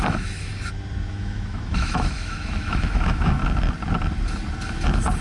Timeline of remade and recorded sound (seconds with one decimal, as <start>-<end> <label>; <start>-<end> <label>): 0.0-0.5 remade; 0.5-1.1 recorded; 1.1-3.4 remade; 3.4-5.2 recorded